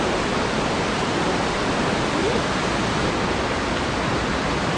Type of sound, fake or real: real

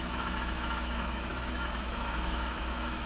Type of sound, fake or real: fake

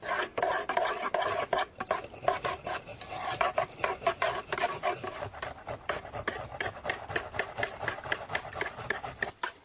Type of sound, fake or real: real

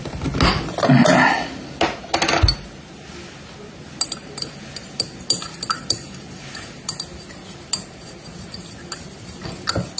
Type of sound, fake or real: real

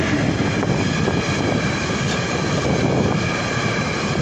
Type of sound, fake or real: real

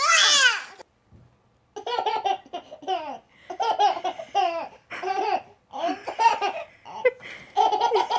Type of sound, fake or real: real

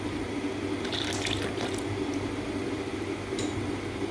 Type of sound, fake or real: real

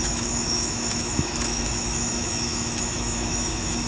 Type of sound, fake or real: fake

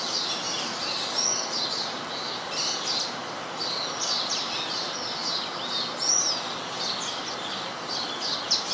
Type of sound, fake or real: real